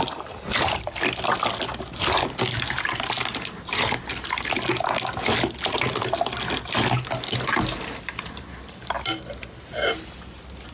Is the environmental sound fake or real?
real